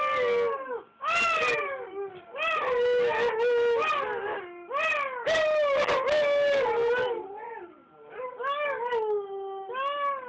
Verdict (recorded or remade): recorded